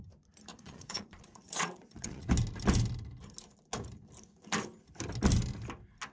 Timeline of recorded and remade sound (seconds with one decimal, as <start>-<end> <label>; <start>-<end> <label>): 0.0-0.5 recorded; 0.5-2.3 remade; 2.3-6.1 recorded